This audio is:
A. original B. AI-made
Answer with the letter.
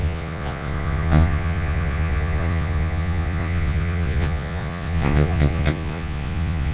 B